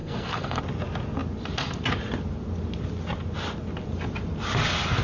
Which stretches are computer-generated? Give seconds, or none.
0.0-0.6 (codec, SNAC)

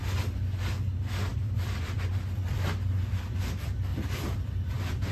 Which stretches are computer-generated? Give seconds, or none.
1.3-2.1 (vocoder, BigVGAN v2); 3.9-5.1

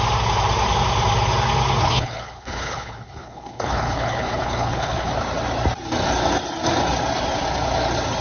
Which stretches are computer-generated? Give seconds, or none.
1.8-5.1 (codec, HILCodec)

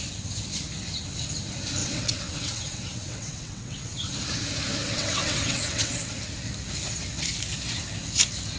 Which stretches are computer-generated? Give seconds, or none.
1.8-4.1 (vocoder, WaveNeXt); 4.8-6.1